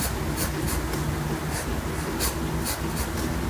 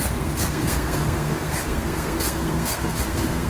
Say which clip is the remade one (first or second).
second